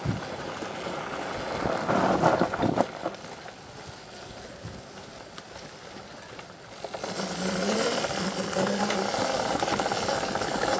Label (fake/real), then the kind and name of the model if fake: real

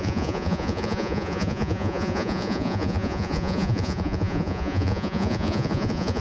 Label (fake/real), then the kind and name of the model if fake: fake, vocoder, Vocos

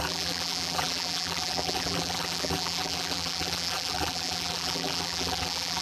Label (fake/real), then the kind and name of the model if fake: fake, vocoder, BigVGAN v2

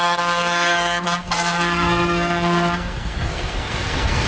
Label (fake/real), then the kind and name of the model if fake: fake, codec, SNAC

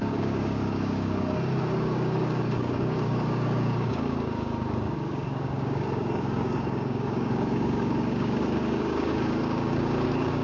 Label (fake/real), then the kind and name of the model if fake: fake, codec, DAC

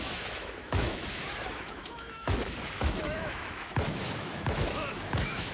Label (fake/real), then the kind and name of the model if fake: fake, autoencoder, DAC-VAE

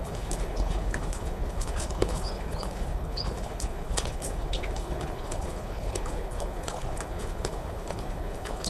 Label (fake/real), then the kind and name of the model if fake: fake, codec, HILCodec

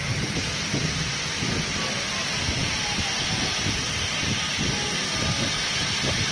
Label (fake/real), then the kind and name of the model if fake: real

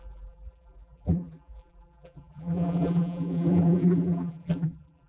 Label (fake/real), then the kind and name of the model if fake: fake, vocoder, BigVGAN v2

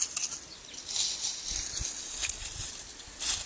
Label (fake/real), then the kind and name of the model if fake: real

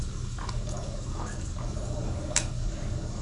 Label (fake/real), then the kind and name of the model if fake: fake, codec, DAC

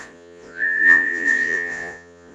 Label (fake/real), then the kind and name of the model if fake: fake, vocoder, Vocos